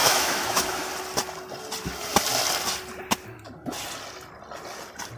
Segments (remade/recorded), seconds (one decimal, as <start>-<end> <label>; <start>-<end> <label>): 0.0-0.9 remade; 0.9-5.2 recorded